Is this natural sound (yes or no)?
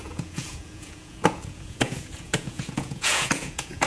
no